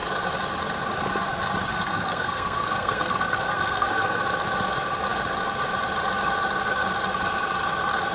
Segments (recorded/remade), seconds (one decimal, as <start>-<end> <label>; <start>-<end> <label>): 0.0-1.7 recorded; 1.7-4.2 remade; 4.2-8.1 recorded